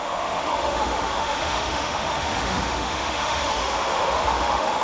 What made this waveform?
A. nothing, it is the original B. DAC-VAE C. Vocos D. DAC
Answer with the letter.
B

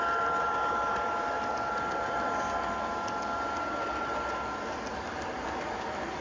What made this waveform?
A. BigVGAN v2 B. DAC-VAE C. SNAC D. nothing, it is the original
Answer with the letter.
D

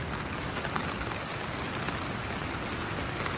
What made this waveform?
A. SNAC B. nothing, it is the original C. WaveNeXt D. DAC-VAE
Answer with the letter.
B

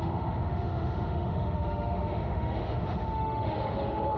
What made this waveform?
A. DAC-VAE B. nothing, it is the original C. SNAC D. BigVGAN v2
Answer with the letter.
A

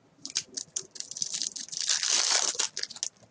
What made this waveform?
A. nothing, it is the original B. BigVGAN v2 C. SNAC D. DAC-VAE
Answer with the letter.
A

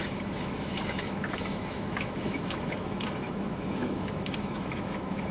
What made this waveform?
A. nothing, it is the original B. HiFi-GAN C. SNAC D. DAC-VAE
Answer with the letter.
D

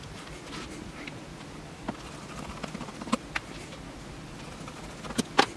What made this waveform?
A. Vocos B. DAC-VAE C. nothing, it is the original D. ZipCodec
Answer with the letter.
C